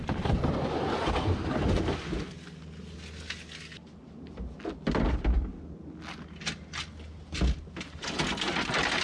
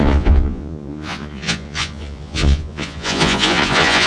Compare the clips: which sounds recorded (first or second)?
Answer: first